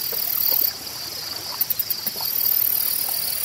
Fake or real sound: real